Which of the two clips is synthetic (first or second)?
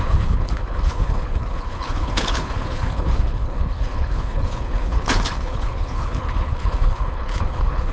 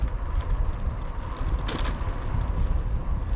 first